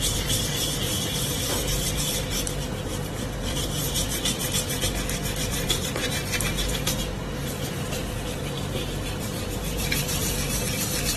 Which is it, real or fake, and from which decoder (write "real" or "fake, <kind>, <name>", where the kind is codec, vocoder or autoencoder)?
fake, vocoder, BigVGAN v2